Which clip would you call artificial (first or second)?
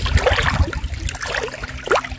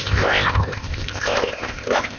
second